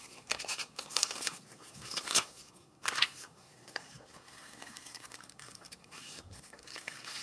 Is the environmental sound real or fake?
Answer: fake